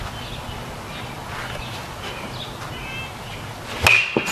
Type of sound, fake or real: real